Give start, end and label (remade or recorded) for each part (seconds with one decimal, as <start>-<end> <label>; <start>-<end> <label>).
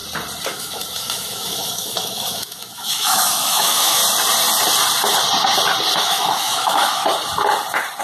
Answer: 0.0-0.5 recorded; 0.5-4.0 remade; 4.0-6.0 recorded; 6.0-7.0 remade; 7.0-8.0 recorded